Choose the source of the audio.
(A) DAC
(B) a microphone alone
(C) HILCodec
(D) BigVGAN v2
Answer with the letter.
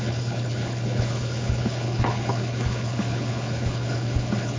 C